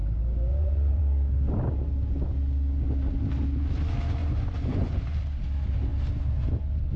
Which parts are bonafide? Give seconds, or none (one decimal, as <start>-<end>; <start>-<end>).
0.0-0.5; 1.0-4.2; 5.0-7.0